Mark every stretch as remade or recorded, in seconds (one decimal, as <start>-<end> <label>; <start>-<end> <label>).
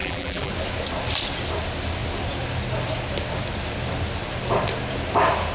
0.0-0.5 remade; 0.5-5.5 recorded